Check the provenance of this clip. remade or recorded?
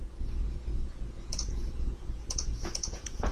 remade